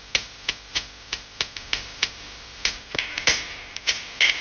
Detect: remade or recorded recorded